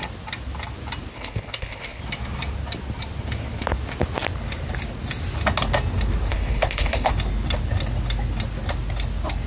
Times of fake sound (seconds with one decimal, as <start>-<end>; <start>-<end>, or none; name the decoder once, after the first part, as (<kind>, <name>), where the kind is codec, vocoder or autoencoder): 1.1-2.0 (codec, HILCodec); 6.3-7.1